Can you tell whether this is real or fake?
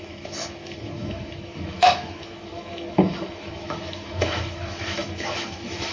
fake